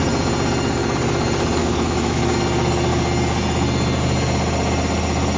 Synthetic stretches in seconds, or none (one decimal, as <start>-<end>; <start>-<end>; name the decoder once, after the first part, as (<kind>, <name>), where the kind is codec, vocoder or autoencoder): 1.6-2.3 (autoencoder, DAC-VAE)